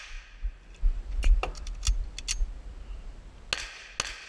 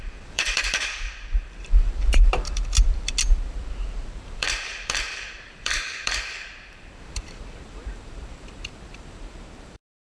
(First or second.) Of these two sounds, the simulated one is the second